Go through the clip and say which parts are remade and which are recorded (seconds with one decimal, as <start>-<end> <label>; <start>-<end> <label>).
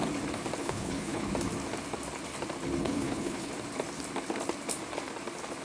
0.0-0.6 recorded; 0.6-1.3 remade; 1.3-2.8 recorded; 2.8-3.5 remade; 3.5-5.6 recorded